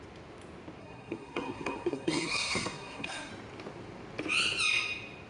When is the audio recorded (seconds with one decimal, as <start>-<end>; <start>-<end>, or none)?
0.0-0.8; 3.3-5.3